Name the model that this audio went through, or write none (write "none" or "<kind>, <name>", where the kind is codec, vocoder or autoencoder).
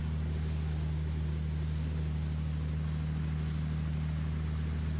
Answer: none